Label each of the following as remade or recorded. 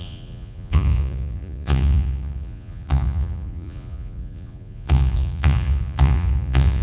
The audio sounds remade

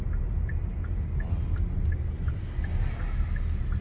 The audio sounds recorded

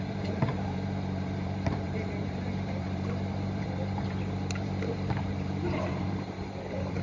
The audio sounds remade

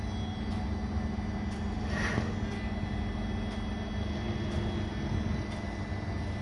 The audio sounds recorded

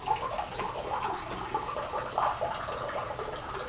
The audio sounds recorded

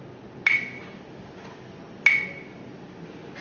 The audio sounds recorded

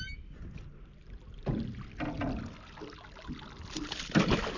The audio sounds recorded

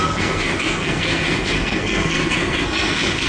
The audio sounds remade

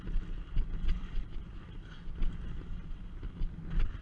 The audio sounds recorded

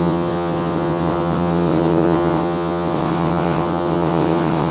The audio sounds remade